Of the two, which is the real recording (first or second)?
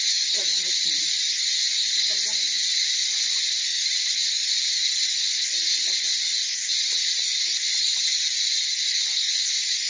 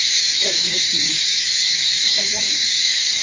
first